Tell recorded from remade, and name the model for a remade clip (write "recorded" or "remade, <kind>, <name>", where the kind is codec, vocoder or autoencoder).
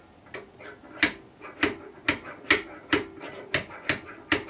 recorded